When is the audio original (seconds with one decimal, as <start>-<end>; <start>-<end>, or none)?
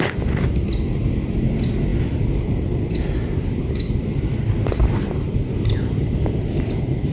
0.0-4.3